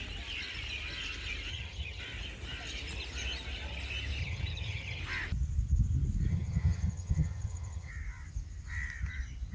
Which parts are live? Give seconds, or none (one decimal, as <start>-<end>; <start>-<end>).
0.0-1.5; 2.0-4.2; 5.0-6.3; 7.9-9.5